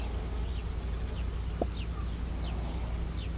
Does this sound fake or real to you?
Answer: real